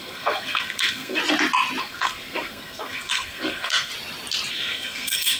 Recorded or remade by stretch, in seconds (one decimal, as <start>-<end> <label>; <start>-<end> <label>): 0.0-1.2 remade; 1.2-1.8 recorded; 1.8-3.9 remade; 3.9-4.5 recorded; 4.5-5.4 remade